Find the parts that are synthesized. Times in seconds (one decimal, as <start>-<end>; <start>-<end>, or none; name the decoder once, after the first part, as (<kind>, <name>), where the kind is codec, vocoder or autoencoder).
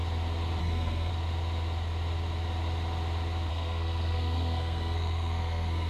0.6-1.1 (codec, SNAC); 3.5-5.9